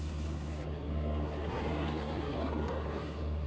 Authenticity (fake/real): fake